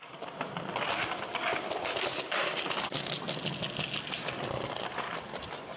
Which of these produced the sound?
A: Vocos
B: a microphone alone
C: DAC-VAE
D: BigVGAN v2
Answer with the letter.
B